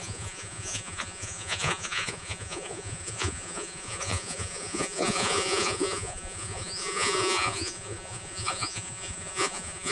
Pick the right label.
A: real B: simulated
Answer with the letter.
B